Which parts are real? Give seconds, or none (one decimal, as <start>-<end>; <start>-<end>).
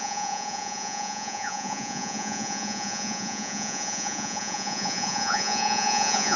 none